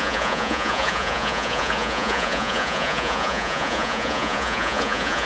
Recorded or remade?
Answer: remade